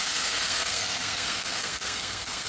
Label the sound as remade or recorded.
remade